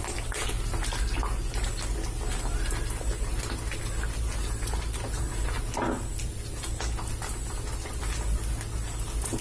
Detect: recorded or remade recorded